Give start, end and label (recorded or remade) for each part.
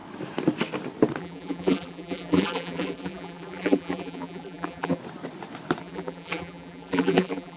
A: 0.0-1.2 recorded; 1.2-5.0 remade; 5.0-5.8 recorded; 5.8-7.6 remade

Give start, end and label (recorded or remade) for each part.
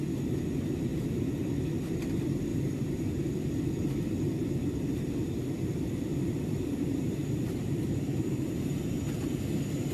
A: 0.0-2.5 recorded; 2.5-3.7 remade; 3.7-6.1 recorded; 6.1-8.5 remade; 8.5-9.9 recorded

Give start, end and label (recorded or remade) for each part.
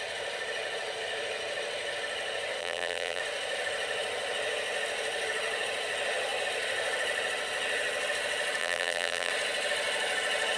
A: 0.0-2.6 recorded; 2.6-3.2 remade; 3.2-8.6 recorded; 8.6-9.3 remade; 9.3-10.6 recorded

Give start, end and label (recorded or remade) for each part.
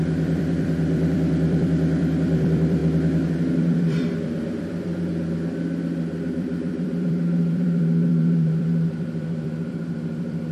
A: 0.0-2.8 remade; 2.8-3.5 recorded; 3.5-5.1 remade; 5.1-6.3 recorded; 6.3-10.5 remade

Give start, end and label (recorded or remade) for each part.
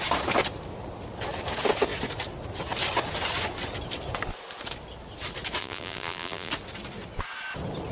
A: 0.0-5.6 recorded; 5.6-6.5 remade; 6.5-7.9 recorded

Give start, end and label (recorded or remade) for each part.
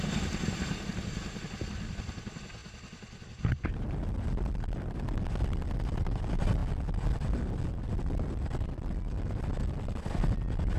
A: 0.0-10.8 recorded